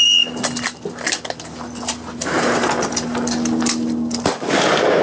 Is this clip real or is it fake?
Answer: real